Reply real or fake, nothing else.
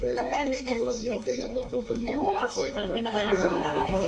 fake